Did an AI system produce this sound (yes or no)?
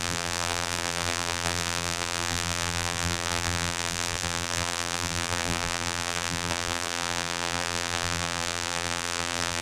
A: yes